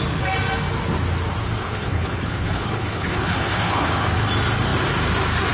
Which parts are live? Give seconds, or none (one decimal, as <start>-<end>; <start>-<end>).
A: 0.0-1.6; 3.9-5.5